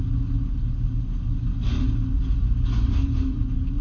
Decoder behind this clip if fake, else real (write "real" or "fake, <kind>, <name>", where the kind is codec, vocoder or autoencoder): real